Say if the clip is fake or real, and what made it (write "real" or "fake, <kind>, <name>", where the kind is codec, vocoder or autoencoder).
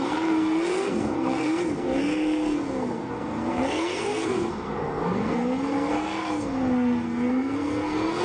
fake, codec, SNAC